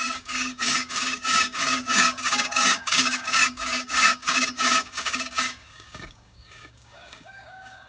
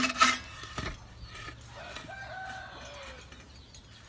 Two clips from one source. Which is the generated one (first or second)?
first